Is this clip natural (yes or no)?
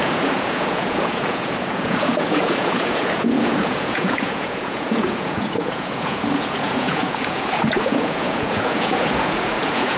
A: no